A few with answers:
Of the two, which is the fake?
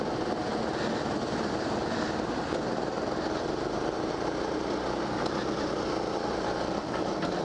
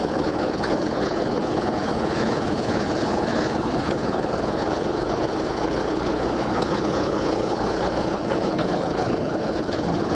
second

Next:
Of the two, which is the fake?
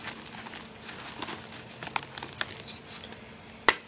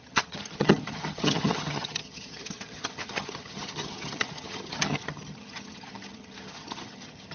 second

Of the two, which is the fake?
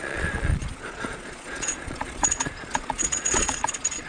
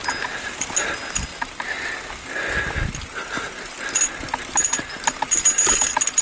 first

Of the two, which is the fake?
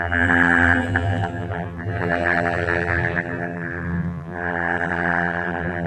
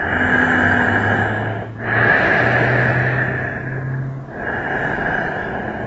first